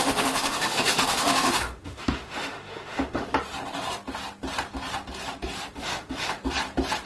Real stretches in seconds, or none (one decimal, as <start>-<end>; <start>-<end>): 3.3-5.7; 6.4-7.1